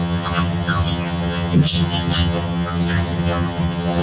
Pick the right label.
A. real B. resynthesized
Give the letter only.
B